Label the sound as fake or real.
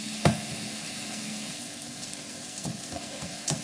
fake